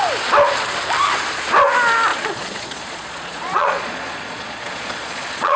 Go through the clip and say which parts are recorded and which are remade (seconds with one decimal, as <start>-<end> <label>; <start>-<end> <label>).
0.0-2.1 recorded; 2.1-5.6 remade